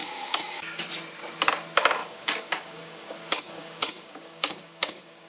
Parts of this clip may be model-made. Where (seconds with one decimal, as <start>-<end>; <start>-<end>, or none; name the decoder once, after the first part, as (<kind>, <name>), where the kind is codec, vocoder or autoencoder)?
0.0-0.9 (codec, DAC); 2.0-5.3